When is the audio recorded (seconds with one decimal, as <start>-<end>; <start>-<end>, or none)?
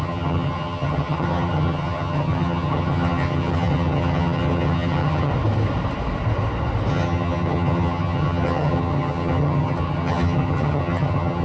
5.3-6.9